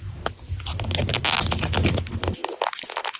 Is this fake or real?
real